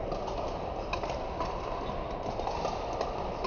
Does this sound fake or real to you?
real